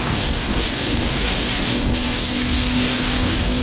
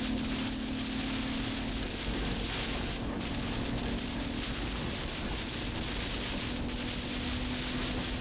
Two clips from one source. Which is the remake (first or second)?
first